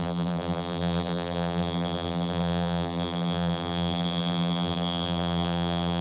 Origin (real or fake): fake